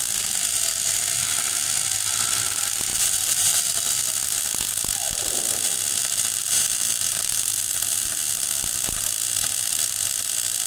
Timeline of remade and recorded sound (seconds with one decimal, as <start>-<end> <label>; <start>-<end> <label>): 0.0-2.9 recorded; 2.9-3.6 remade; 3.6-6.0 recorded; 6.0-7.6 remade; 7.6-10.7 recorded

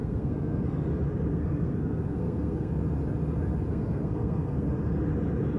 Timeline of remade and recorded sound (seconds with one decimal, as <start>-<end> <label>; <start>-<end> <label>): 0.0-0.6 remade; 0.6-1.3 recorded; 1.3-2.7 remade; 2.7-3.7 recorded; 3.7-4.7 remade; 4.7-5.6 recorded

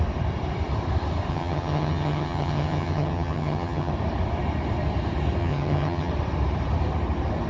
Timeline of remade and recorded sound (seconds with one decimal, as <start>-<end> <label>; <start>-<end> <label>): 0.0-1.3 recorded; 1.3-3.9 remade; 3.9-5.4 recorded; 5.4-6.1 remade; 6.1-7.5 recorded